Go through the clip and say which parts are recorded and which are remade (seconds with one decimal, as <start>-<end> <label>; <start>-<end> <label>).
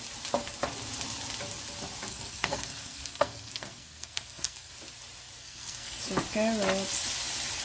0.0-2.1 recorded; 2.1-4.7 remade; 4.7-5.4 recorded; 5.4-6.0 remade; 6.0-7.6 recorded